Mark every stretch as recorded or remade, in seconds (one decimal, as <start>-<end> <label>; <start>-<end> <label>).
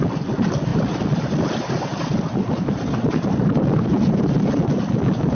0.0-5.3 recorded